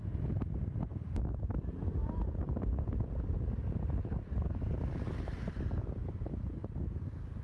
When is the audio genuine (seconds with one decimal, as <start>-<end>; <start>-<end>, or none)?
0.0-7.4